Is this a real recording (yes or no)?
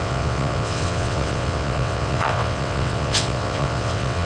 no